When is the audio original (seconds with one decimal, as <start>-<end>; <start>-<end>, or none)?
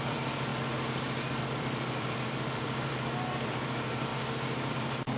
0.5-1.4; 4.1-4.7